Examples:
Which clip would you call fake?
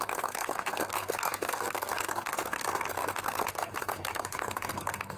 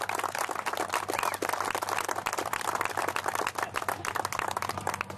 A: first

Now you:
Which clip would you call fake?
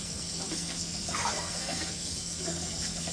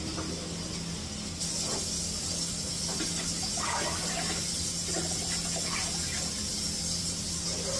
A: first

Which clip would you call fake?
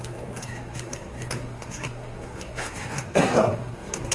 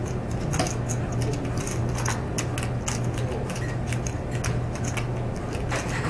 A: first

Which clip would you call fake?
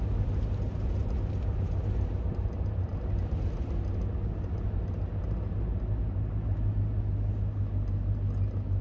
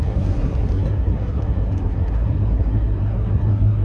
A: second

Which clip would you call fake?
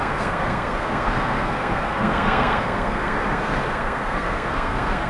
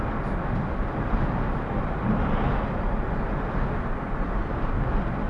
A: first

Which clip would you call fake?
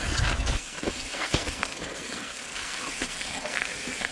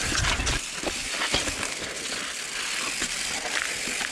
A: first